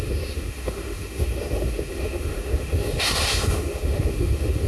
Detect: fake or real fake